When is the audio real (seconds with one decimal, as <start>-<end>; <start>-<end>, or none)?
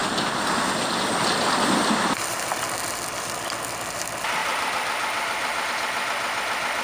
0.0-4.4; 5.7-6.8